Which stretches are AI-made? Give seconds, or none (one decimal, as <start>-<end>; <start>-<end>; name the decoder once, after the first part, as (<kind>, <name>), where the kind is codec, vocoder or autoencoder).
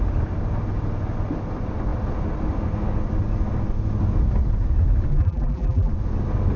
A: 5.1-5.9 (vocoder, BigVGAN v2)